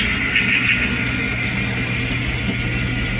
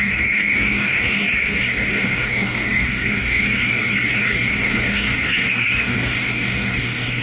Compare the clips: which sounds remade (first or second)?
second